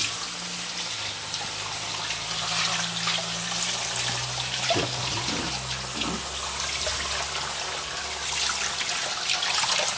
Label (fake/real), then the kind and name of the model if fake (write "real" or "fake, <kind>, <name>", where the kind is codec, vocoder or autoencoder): real